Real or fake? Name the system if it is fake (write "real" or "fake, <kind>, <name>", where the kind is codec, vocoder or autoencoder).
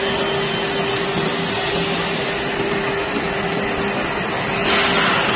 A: real